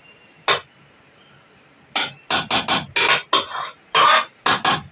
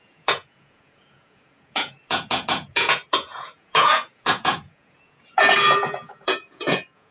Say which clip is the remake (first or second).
second